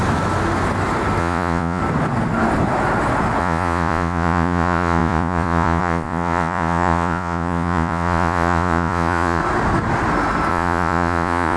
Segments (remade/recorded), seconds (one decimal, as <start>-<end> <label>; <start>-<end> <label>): 0.0-1.2 recorded; 1.2-1.8 remade; 1.8-3.4 recorded; 3.4-9.4 remade; 9.4-10.5 recorded; 10.5-11.6 remade